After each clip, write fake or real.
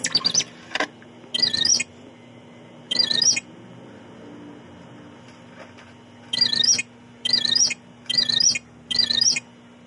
fake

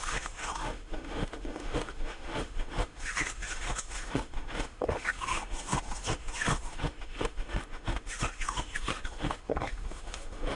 fake